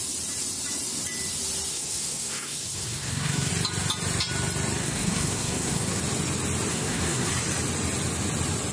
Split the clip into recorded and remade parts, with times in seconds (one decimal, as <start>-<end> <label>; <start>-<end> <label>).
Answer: 0.0-1.7 recorded; 1.7-3.5 remade; 3.5-4.8 recorded; 4.8-6.0 remade; 6.0-6.7 recorded; 6.7-7.3 remade; 7.3-8.7 recorded